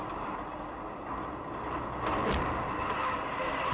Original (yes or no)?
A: yes